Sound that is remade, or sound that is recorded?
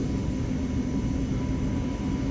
recorded